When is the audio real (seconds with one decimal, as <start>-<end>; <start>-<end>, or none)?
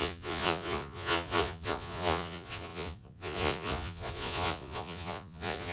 none